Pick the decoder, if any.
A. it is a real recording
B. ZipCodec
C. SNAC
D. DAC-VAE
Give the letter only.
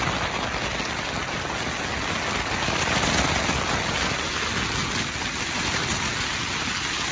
A